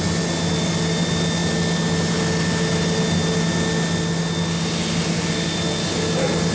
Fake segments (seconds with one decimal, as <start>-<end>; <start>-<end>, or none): none